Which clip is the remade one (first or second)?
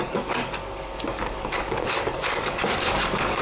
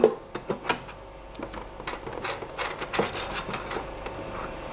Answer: first